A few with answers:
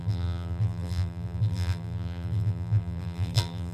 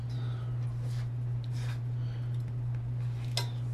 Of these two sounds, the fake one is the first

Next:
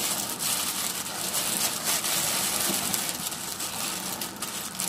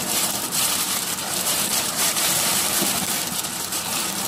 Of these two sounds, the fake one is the second